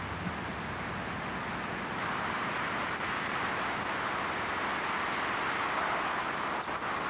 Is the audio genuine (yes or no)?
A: yes